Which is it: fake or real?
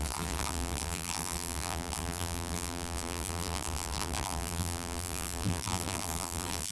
fake